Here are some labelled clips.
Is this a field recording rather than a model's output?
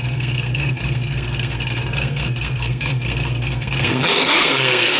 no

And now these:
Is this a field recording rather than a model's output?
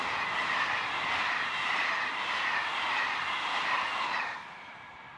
yes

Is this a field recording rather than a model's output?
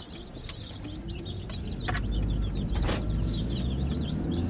yes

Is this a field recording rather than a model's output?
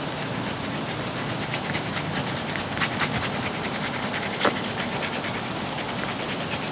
yes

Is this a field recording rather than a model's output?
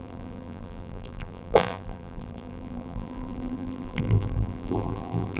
no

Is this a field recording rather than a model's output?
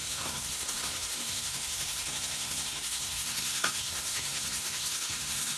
no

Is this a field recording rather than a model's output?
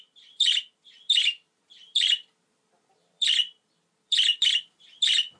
no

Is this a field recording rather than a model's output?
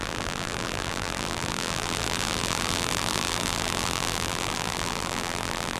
no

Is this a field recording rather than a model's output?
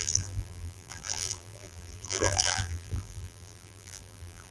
no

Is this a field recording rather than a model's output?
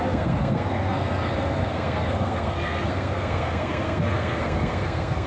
no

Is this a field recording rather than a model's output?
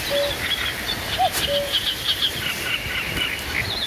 yes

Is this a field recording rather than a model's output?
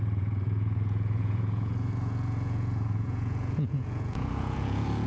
no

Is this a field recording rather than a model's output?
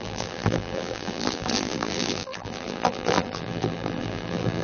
no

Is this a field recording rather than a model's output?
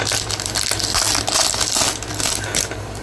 yes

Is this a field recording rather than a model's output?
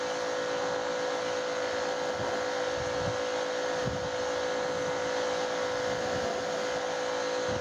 yes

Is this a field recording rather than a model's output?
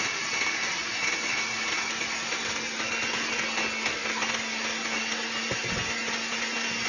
yes